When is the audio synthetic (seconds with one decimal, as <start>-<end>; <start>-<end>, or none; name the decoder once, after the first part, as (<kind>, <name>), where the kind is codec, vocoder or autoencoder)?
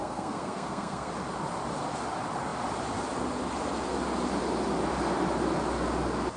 0.0-1.1 (codec, SNAC)